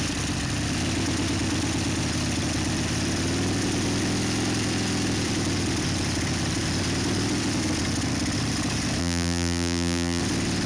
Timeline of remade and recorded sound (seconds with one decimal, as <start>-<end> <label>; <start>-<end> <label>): 0.0-9.0 recorded; 9.0-10.2 remade; 10.2-10.7 recorded